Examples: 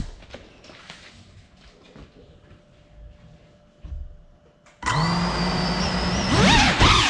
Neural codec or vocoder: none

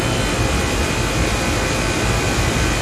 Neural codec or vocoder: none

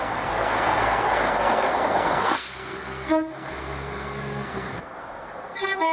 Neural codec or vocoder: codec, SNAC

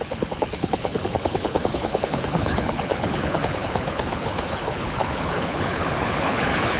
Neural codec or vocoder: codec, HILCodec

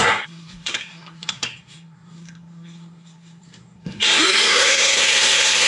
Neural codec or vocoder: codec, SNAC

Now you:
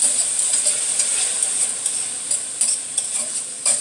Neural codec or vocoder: vocoder, BigVGAN v2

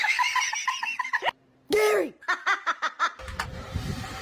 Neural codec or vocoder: vocoder, BigVGAN v2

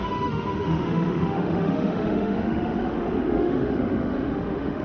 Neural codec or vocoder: autoencoder, DAC-VAE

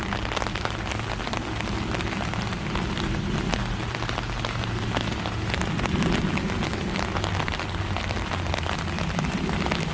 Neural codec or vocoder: none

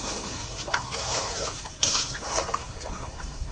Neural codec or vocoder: codec, SNAC